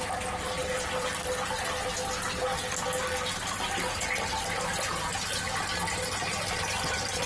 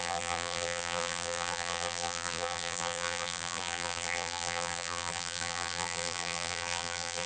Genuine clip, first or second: first